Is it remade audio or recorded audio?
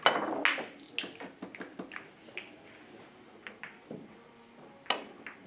recorded